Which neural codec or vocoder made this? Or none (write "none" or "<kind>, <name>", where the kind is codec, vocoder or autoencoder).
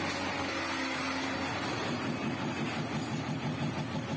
none